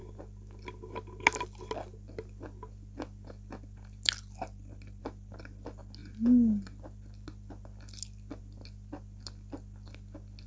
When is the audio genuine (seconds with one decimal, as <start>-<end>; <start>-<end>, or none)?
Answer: 0.0-10.5